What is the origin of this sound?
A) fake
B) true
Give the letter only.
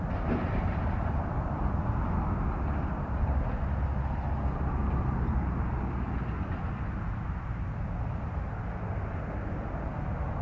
B